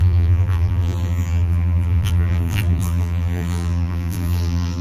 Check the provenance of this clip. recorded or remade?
remade